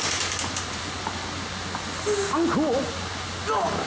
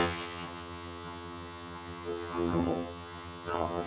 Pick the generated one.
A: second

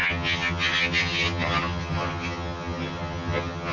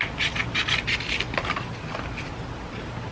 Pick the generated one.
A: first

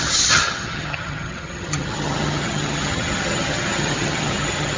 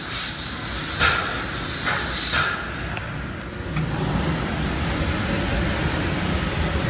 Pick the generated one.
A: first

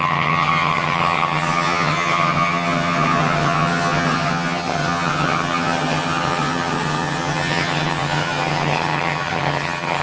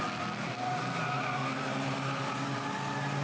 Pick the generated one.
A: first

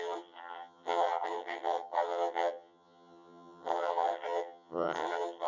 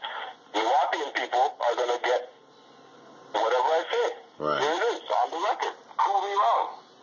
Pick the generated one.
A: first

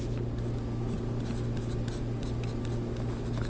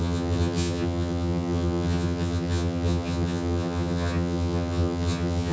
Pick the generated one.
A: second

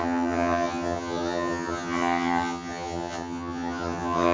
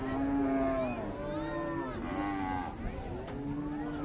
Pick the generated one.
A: first